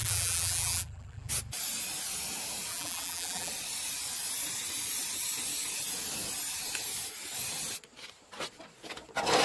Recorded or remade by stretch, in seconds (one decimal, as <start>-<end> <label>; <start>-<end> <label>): 0.0-1.3 remade; 1.3-2.7 recorded; 2.7-3.5 remade; 3.5-9.4 recorded